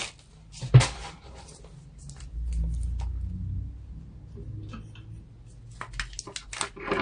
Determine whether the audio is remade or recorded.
recorded